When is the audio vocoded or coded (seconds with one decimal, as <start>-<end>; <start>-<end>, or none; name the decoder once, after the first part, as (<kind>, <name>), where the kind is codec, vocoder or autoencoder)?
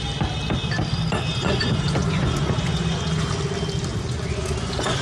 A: 1.3-3.3 (vocoder, Vocos); 3.9-5.0